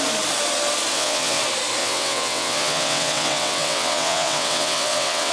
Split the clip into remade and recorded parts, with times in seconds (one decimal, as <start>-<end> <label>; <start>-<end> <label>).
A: 0.0-0.9 recorded; 0.9-1.4 remade; 1.4-1.8 recorded; 1.8-5.3 remade